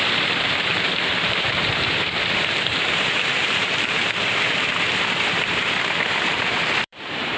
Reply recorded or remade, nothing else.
remade